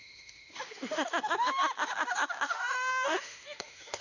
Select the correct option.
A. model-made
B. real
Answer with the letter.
A